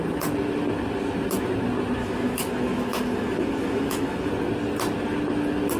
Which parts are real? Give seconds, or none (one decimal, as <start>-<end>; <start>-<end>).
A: 0.0-2.0; 4.3-5.8